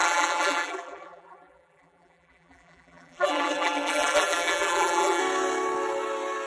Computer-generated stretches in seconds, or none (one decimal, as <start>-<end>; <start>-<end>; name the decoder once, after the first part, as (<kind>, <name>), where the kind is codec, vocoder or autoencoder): 0.0-5.2 (vocoder, BigVGAN v2)